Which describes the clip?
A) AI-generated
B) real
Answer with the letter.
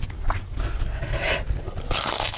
B